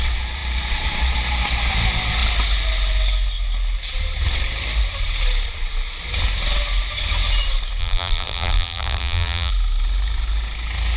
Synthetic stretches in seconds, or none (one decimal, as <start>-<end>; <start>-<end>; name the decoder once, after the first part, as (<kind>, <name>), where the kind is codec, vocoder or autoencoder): 7.8-9.5 (vocoder, BigVGAN v2)